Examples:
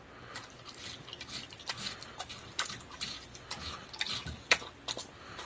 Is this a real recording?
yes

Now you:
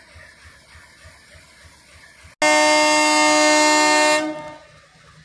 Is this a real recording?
yes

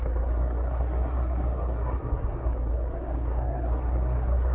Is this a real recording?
no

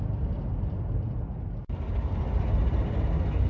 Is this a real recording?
yes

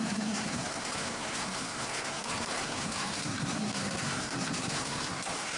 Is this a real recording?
no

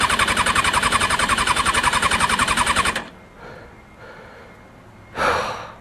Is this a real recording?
yes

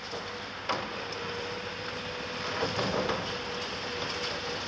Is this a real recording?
yes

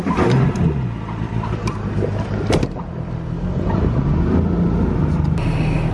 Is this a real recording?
yes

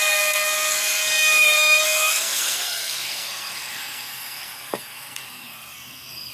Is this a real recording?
no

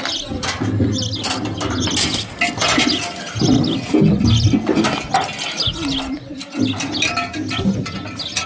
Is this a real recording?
yes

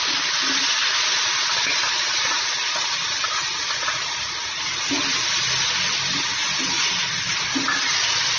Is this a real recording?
yes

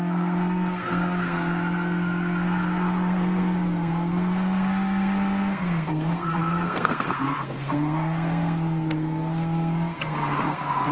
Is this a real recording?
no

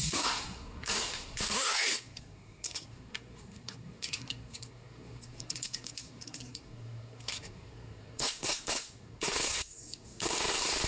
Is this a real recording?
no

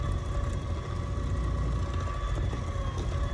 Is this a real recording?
yes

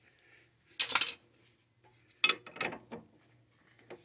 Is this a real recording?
yes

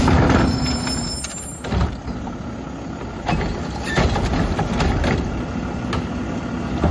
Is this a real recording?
yes